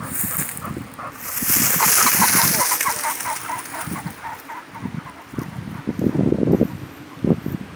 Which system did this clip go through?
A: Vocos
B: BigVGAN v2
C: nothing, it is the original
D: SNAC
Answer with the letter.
C